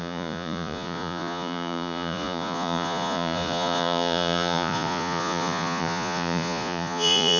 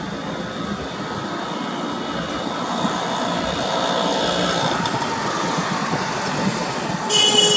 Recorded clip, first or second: second